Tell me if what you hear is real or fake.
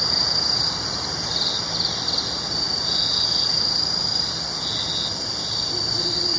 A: fake